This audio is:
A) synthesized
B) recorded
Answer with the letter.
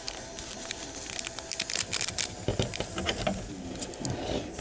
B